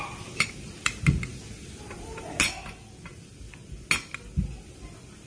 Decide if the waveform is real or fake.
real